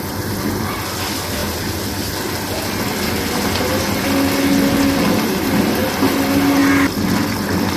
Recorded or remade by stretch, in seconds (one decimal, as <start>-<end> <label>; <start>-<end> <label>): 0.0-7.8 recorded